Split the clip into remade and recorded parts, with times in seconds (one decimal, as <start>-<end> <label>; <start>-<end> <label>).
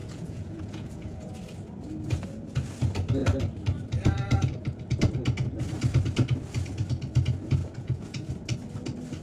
0.0-1.3 remade; 1.3-7.6 recorded; 7.6-8.3 remade; 8.3-9.2 recorded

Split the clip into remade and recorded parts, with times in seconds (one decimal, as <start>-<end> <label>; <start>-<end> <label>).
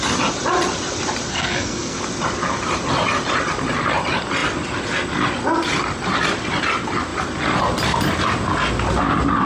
0.0-1.3 recorded; 1.3-2.0 remade; 2.0-9.5 recorded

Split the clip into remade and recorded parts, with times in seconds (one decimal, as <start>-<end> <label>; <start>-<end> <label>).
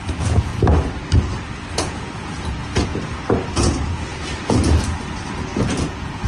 0.0-0.5 remade; 0.5-1.7 recorded; 1.7-2.9 remade; 2.9-3.5 recorded; 3.5-4.1 remade; 4.1-5.6 recorded; 5.6-6.3 remade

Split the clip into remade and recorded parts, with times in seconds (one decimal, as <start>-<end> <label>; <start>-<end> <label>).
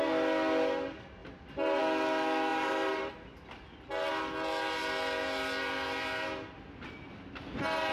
0.0-2.5 recorded; 2.5-3.1 remade; 3.1-7.9 recorded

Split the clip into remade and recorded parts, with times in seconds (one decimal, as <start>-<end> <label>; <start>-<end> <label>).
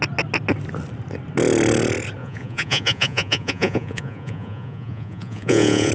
0.0-2.2 recorded; 2.2-5.9 remade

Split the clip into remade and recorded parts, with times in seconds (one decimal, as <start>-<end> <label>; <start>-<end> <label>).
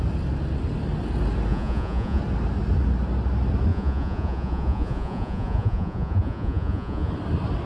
0.0-1.5 recorded; 1.5-2.2 remade; 2.2-3.7 recorded; 3.7-7.1 remade; 7.1-7.7 recorded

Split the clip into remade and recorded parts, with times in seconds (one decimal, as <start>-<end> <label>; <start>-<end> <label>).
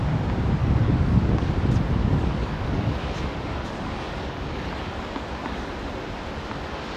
0.0-0.6 recorded; 0.6-1.5 remade; 1.5-2.0 recorded; 2.0-5.7 remade; 5.7-7.0 recorded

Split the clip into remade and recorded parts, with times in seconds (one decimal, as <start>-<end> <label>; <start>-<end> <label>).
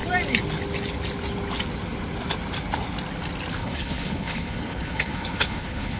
0.0-3.6 recorded; 3.6-6.0 remade